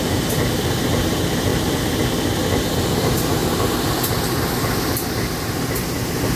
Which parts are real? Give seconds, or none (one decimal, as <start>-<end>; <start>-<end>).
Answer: 0.0-1.5; 2.0-6.4